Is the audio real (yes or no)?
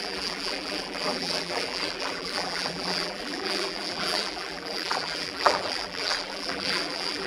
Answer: no